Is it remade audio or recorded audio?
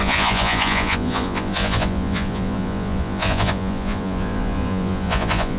remade